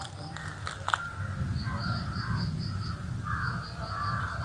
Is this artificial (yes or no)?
no